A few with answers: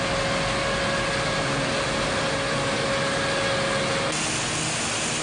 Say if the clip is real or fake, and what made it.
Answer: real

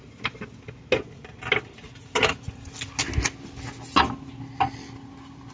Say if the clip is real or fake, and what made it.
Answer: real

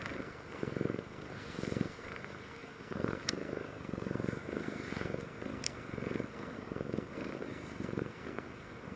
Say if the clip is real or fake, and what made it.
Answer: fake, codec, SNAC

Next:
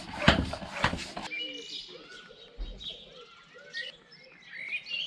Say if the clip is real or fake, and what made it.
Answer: real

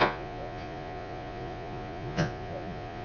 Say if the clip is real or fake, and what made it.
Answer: fake, vocoder, Vocos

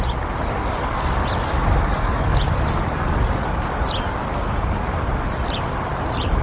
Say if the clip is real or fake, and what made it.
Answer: real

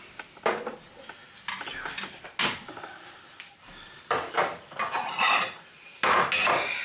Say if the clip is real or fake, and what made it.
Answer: real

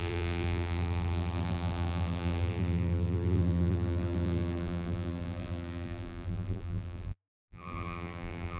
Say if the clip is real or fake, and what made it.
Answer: fake, vocoder, BigVGAN v2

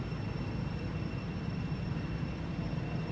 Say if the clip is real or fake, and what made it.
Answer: fake, vocoder, BigVGAN v2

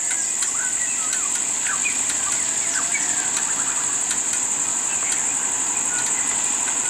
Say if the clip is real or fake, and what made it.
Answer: real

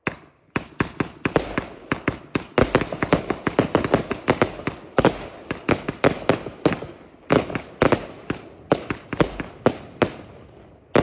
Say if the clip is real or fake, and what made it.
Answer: real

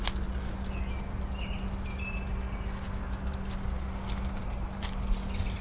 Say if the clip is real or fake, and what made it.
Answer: real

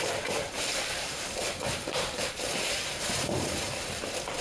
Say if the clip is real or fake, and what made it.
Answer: fake, vocoder, BigVGAN v2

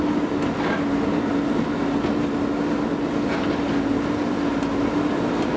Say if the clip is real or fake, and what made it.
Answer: real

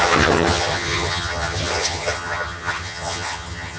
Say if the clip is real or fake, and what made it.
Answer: fake, vocoder, HiFi-GAN